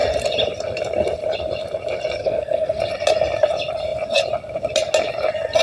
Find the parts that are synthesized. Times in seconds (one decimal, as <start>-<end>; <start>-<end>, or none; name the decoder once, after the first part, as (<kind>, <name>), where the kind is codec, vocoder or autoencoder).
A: 2.2-2.8 (codec, SNAC)